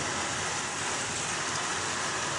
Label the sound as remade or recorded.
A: recorded